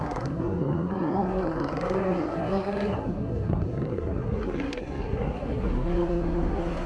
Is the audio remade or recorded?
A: remade